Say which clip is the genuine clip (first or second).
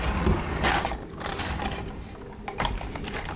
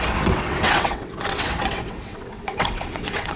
first